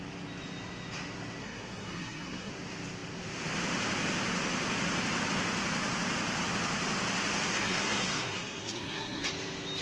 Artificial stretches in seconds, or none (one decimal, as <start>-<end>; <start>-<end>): 1.4-2.5; 7.5-9.3